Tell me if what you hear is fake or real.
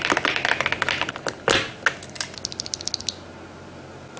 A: real